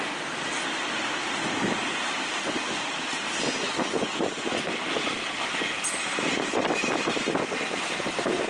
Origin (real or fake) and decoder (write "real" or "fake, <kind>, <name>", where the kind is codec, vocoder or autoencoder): real